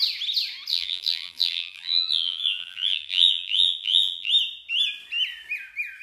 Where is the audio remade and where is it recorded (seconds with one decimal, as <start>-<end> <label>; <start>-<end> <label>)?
0.0-0.7 recorded; 0.7-4.3 remade; 4.3-6.0 recorded